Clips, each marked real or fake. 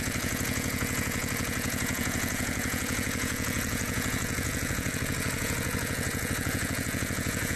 fake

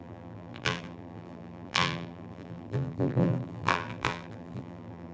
fake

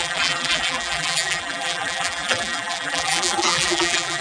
fake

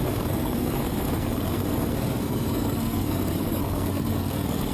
fake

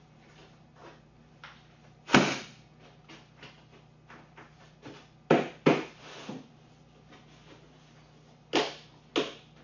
real